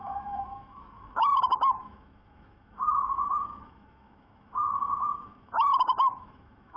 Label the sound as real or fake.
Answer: fake